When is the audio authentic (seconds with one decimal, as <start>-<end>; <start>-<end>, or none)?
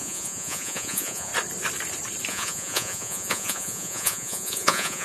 1.3-2.3